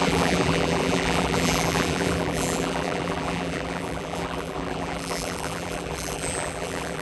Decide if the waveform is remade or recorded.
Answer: remade